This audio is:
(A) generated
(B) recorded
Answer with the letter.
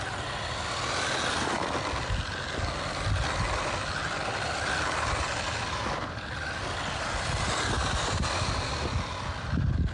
B